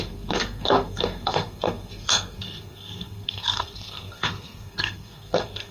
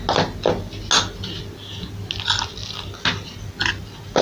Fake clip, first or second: first